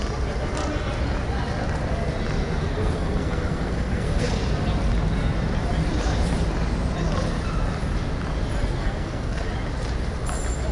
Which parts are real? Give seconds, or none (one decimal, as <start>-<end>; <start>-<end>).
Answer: 0.0-2.6; 4.4-8.8; 9.5-10.7